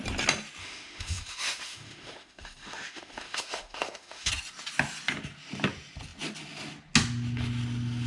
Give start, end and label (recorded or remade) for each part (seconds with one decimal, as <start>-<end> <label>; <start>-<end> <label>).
0.0-0.6 recorded; 0.6-4.3 remade; 4.3-8.1 recorded